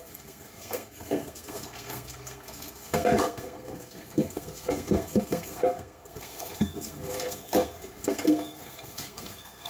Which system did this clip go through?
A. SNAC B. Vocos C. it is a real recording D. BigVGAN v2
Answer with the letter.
A